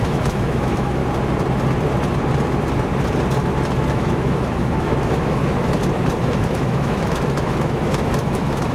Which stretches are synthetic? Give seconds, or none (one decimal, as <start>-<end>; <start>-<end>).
0.0-1.0; 3.9-5.4; 6.2-8.7